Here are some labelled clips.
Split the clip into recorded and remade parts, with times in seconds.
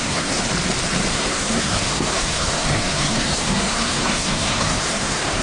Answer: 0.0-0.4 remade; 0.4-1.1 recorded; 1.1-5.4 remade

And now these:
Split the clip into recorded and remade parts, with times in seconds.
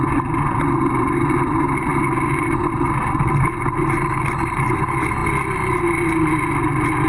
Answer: 0.0-7.1 recorded